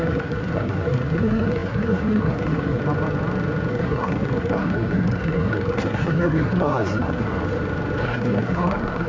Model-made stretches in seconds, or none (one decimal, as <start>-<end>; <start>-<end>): 0.0-2.8; 3.7-7.4; 8.0-9.1